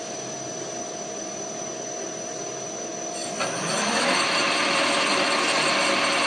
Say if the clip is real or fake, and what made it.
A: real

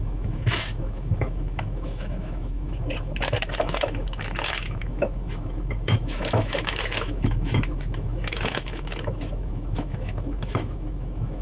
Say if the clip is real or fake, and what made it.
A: fake, autoencoder, DAC-VAE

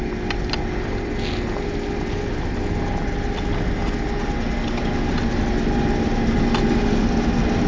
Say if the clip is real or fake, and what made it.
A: real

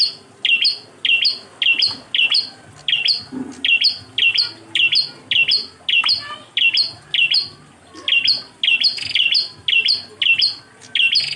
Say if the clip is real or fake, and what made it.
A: real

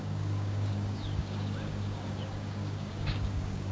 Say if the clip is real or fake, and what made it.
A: fake, codec, DAC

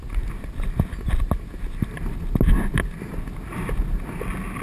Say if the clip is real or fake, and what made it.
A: real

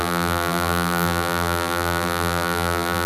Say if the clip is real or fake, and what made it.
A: fake, vocoder, BigVGAN v2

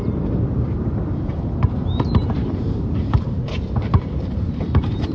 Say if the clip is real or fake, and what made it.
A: fake, vocoder, BigVGAN v2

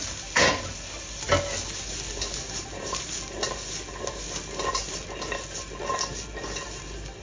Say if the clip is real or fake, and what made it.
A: real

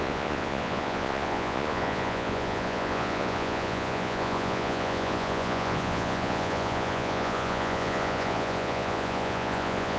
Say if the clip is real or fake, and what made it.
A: fake, vocoder, Vocos